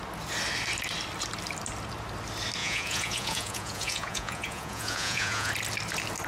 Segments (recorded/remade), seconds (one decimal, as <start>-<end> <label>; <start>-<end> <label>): 0.0-2.6 recorded; 2.6-5.5 remade; 5.5-6.3 recorded